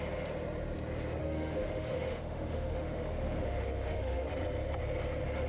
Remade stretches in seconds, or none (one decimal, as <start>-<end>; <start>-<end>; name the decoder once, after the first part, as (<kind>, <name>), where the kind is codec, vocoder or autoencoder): 1.2-4.3 (autoencoder, DAC-VAE)